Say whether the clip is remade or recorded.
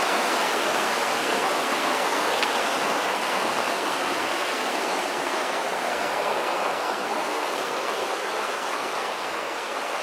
remade